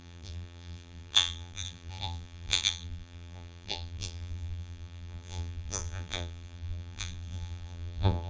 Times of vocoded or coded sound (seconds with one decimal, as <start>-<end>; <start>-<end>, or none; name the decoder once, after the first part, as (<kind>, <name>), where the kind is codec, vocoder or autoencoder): 0.0-8.3 (vocoder, BigVGAN v2)